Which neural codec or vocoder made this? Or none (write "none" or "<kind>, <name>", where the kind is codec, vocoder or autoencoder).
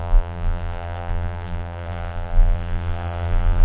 vocoder, BigVGAN v2